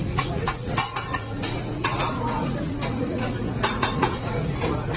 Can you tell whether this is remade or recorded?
remade